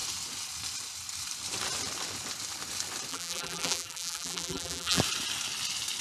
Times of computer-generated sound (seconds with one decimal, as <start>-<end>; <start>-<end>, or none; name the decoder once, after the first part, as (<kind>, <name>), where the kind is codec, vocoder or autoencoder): 3.1-5.0 (vocoder, BigVGAN v2)